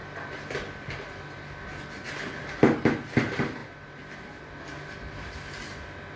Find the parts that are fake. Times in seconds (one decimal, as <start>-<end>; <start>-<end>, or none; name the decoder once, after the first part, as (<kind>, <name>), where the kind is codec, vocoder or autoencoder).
none